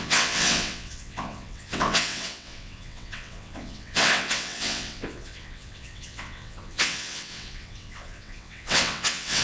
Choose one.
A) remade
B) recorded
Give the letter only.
A